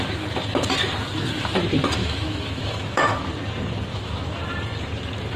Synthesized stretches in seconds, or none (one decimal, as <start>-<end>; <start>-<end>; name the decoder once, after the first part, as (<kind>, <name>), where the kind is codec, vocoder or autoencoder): 2.0-3.3 (autoencoder, DAC-VAE); 3.9-4.4